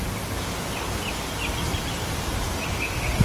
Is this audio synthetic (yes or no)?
no